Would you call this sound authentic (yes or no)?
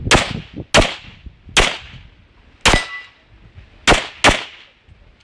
yes